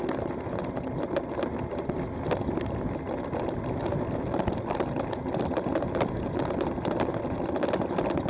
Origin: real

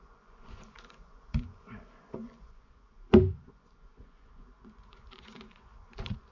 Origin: fake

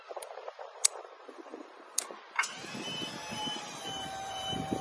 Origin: fake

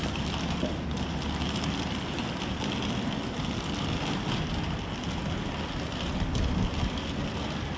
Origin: real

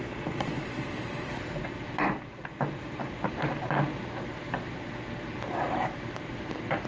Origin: fake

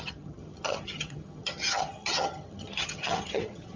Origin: fake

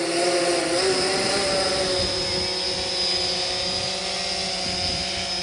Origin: real